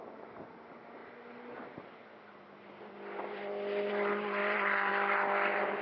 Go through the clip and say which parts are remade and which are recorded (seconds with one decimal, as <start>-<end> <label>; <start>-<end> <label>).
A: 0.0-5.8 recorded